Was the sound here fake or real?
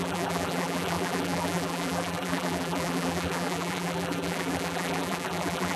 fake